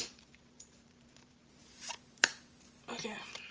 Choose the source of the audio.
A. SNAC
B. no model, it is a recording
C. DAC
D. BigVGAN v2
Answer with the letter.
D